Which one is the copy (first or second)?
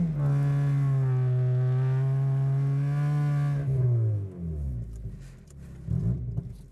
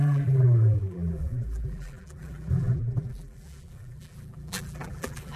second